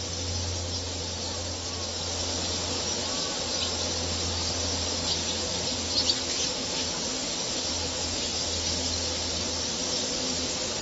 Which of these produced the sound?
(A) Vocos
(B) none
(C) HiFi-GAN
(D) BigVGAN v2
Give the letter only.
B